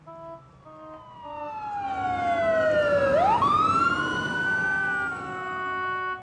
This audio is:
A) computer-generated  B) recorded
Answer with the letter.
B